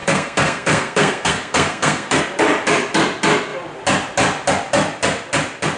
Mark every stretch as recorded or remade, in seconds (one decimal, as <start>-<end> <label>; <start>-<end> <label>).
0.0-2.2 remade; 2.2-5.8 recorded